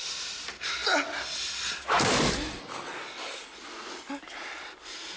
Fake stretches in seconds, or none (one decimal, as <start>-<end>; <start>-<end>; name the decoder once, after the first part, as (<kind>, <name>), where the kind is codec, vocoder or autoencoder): none